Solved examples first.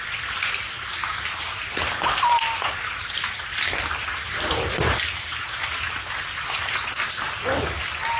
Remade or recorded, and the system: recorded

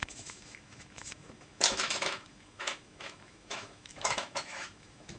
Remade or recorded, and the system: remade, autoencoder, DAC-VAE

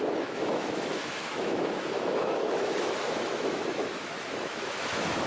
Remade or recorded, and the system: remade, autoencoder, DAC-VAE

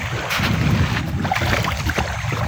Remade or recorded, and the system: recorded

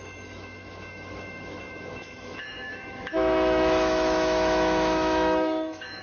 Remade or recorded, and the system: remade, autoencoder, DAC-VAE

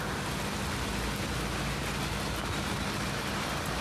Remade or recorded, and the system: recorded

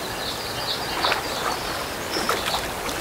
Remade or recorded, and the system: recorded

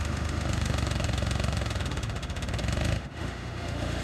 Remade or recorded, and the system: remade, autoencoder, DAC-VAE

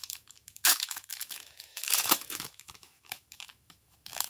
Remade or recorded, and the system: remade, autoencoder, DAC-VAE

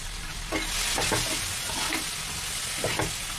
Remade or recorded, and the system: recorded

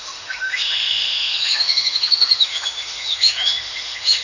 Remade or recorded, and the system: remade, autoencoder, DAC-VAE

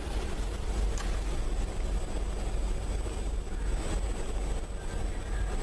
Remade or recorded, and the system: recorded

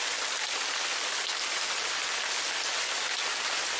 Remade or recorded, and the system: recorded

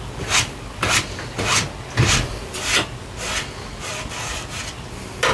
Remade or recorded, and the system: recorded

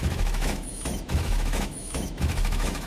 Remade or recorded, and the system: remade, autoencoder, DAC-VAE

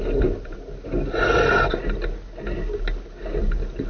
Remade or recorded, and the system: recorded